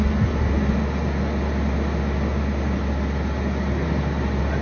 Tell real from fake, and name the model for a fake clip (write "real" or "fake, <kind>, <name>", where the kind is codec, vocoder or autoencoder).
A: real